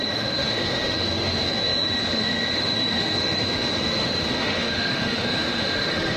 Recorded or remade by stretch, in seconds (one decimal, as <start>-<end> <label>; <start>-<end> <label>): 0.0-6.2 remade